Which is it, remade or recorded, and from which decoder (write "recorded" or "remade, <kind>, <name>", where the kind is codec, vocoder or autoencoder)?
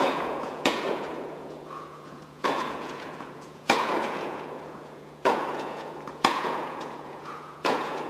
remade, vocoder, Vocos